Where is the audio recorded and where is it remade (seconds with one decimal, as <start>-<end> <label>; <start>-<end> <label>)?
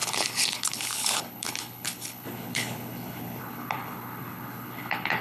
0.0-5.2 remade